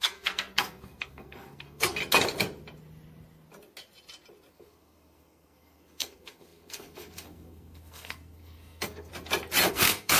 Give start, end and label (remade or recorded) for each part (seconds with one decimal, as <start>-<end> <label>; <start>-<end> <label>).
0.0-2.0 remade; 2.0-4.5 recorded; 4.5-9.1 remade; 9.1-9.7 recorded; 9.7-10.2 remade